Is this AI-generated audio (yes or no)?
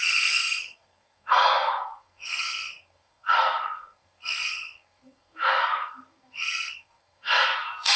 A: yes